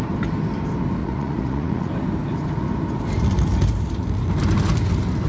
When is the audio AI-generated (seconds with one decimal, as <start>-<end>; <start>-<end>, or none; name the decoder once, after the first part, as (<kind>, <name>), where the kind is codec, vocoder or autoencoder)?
1.0-1.9 (vocoder, Vocos)